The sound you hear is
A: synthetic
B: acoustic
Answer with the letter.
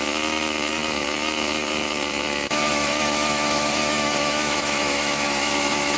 A